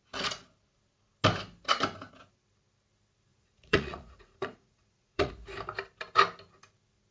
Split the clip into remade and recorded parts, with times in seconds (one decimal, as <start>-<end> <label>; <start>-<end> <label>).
0.0-3.3 recorded; 3.3-5.3 remade; 5.3-7.1 recorded